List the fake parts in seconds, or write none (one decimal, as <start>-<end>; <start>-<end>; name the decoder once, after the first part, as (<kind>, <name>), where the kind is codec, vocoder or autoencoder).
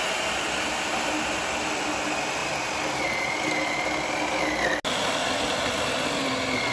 none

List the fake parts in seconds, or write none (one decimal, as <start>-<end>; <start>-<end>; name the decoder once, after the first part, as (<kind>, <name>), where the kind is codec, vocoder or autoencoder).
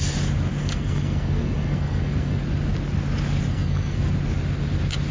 0.6-2.4 (codec, SNAC); 3.5-4.1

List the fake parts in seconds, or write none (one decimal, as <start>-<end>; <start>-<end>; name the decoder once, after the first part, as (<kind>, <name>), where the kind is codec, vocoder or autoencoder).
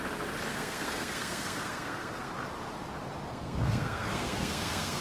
0.5-2.3 (codec, SNAC); 3.3-5.0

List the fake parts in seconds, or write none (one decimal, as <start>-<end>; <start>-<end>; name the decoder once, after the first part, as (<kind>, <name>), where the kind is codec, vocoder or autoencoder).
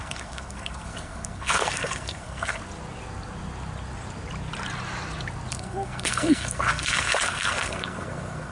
0.0-2.6 (codec, SNAC); 5.5-8.5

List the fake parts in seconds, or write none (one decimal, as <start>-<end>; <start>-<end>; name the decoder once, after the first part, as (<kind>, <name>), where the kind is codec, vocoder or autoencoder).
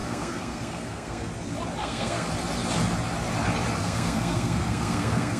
0.0-1.3 (codec, SNAC); 1.8-2.3; 3.8-5.4